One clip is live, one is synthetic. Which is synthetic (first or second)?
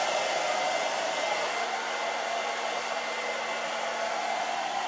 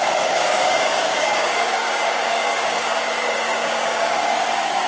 second